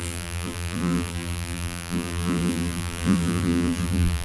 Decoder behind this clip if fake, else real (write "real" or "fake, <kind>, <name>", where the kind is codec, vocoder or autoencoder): fake, vocoder, BigVGAN v2